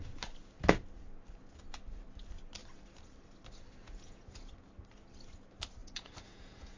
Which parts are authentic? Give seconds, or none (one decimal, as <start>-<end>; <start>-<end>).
0.0-3.8; 4.5-5.8